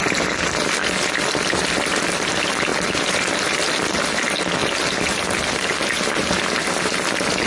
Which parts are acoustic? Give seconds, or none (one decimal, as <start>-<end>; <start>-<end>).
0.0-7.5